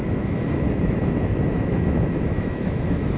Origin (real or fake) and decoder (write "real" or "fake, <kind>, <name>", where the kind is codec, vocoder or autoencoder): fake, autoencoder, DAC-VAE